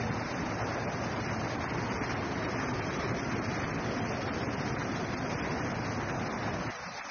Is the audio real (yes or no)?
yes